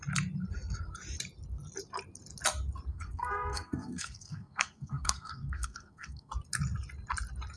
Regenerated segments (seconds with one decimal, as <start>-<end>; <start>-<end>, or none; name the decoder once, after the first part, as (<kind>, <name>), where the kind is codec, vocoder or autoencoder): 2.9-6.3 (codec, SNAC)